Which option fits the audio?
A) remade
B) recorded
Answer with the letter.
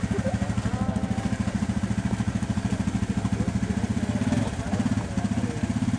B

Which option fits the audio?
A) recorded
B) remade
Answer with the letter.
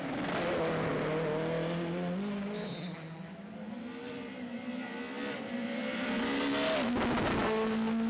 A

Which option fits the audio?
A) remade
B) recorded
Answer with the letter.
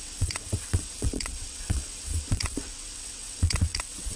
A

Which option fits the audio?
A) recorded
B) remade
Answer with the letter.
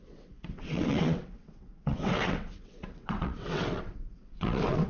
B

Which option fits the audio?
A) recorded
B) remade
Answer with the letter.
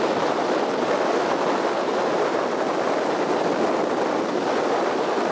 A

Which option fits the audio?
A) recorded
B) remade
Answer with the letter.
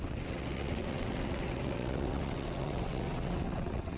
B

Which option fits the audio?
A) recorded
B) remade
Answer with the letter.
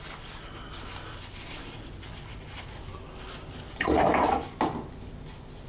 A